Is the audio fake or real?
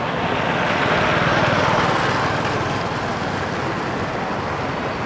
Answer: real